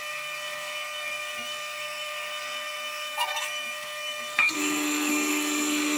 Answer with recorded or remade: remade